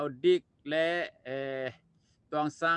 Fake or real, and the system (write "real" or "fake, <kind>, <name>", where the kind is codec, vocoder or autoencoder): real